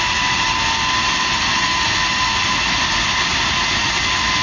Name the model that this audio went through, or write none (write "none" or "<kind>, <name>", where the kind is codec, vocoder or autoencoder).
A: none